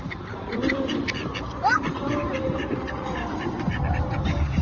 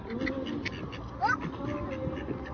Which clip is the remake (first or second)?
first